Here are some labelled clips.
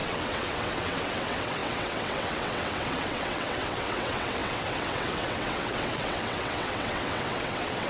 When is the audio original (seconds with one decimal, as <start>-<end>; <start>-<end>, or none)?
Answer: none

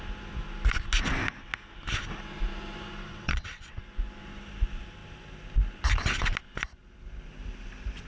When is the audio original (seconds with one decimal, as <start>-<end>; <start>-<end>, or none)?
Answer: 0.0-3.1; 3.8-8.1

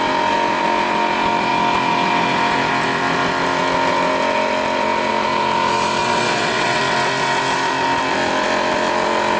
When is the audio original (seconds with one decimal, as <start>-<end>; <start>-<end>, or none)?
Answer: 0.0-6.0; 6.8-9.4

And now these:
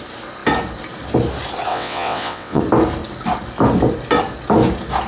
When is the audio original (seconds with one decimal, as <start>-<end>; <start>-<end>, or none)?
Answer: 0.0-1.7; 2.6-5.1

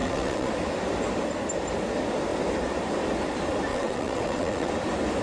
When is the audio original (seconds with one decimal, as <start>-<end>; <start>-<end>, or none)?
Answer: 0.5-3.7; 4.7-5.2